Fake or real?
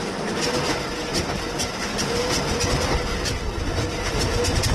real